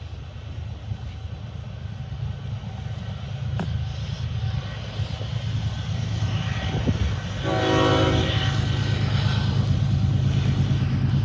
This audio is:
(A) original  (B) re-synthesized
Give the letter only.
A